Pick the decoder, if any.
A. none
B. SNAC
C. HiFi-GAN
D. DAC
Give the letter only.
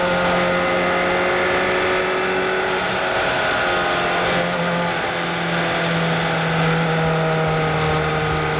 A